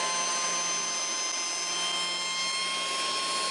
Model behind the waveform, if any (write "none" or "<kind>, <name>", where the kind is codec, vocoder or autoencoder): none